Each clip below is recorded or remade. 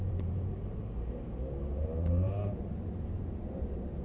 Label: remade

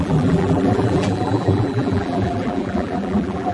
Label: remade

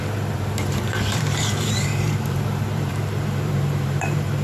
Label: remade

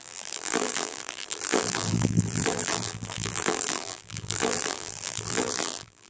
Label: remade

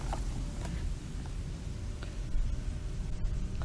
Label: recorded